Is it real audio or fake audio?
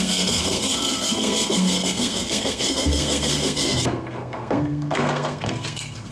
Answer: fake